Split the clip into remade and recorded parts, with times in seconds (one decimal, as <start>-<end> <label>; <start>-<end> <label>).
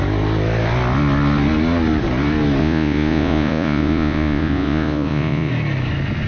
0.0-2.6 recorded; 2.6-5.5 remade; 5.5-6.3 recorded